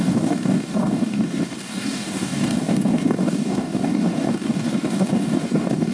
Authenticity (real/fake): fake